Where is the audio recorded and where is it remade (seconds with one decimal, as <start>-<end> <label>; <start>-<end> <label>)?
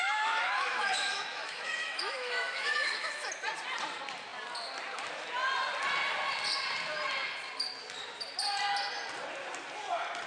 0.0-3.3 remade; 3.3-10.3 recorded